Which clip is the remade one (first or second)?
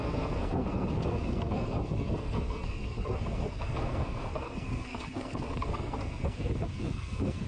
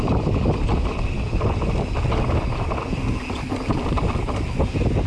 first